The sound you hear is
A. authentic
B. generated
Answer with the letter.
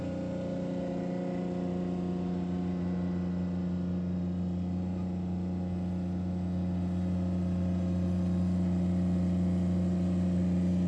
A